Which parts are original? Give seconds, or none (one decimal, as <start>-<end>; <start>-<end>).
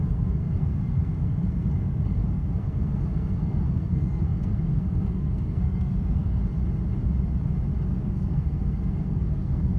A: 6.4-7.9